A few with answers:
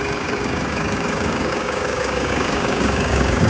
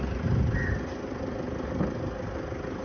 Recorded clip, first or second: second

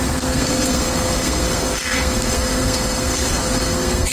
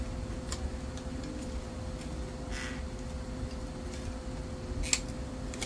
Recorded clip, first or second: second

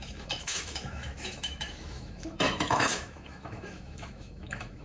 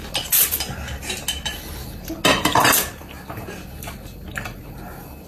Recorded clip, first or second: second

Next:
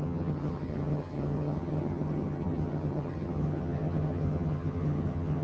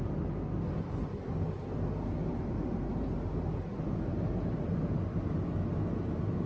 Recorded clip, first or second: second